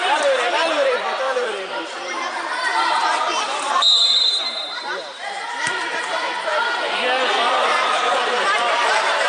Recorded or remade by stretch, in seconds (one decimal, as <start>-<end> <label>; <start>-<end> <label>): 0.0-6.5 remade; 6.5-7.5 recorded; 7.5-9.3 remade